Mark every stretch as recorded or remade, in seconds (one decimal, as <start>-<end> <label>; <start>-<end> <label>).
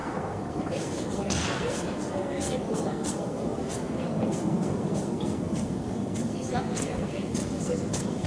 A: 0.0-8.3 remade